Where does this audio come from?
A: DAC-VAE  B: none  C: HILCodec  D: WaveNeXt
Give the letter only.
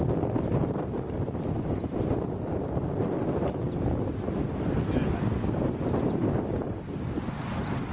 B